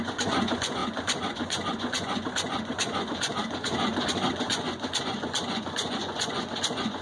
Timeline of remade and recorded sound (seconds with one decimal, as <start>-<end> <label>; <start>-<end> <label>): 0.0-7.0 remade